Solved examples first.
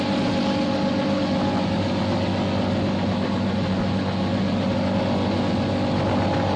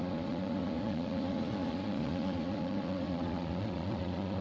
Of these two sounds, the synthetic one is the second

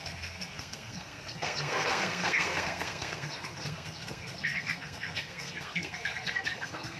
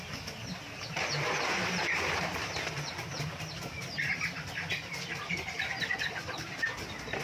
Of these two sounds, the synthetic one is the first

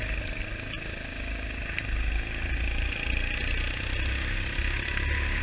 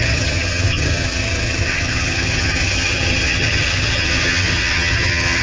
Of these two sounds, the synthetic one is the second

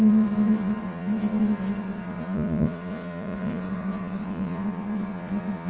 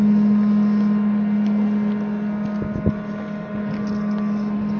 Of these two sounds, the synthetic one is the first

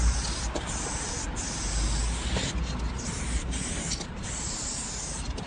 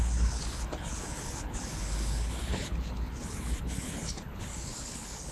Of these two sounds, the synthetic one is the second